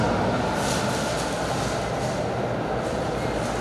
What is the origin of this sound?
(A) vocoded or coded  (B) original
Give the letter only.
B